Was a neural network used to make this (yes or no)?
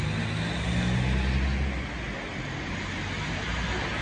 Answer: no